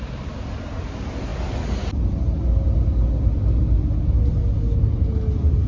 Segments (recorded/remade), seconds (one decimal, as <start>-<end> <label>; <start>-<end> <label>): 0.0-5.7 recorded